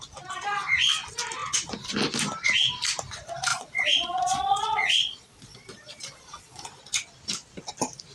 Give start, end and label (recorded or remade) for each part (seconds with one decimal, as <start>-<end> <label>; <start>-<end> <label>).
0.0-3.5 recorded; 3.5-6.8 remade; 6.8-8.1 recorded